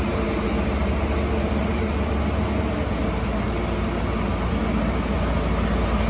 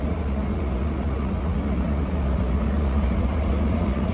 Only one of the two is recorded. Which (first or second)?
first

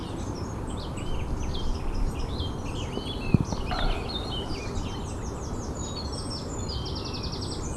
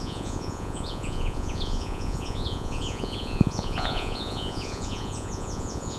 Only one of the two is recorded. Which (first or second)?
first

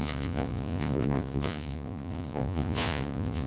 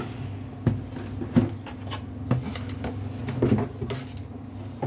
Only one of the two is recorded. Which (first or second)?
second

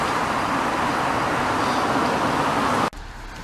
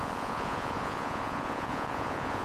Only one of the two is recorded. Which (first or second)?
first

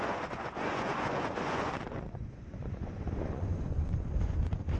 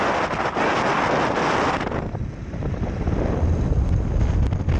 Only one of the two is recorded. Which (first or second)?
second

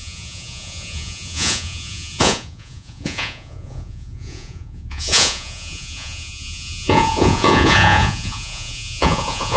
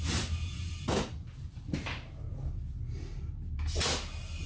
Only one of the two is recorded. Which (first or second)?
second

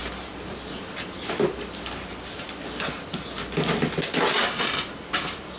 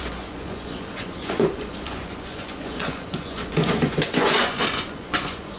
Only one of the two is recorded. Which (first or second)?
first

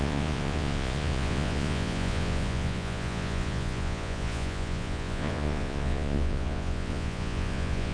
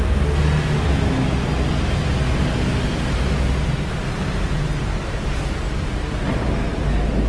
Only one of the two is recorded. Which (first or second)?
second